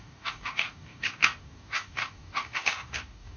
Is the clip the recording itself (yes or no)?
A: no